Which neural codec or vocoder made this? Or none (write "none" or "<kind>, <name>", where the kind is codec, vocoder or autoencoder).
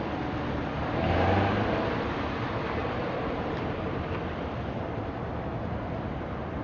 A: none